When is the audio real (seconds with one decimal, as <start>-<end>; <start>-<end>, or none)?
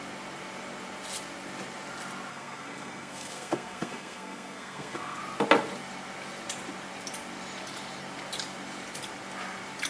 0.0-2.3; 5.2-9.9